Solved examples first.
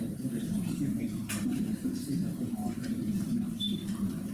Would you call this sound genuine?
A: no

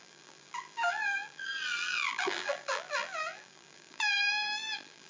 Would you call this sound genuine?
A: no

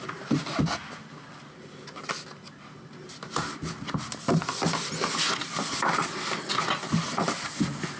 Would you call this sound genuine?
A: yes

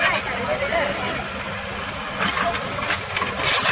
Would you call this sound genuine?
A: yes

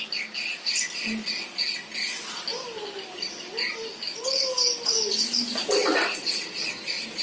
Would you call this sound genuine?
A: yes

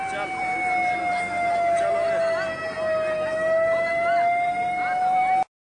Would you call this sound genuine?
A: yes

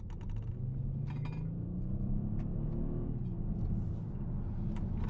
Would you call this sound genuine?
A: yes